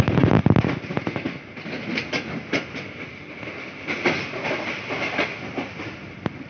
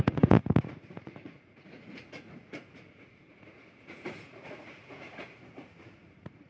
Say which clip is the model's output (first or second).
second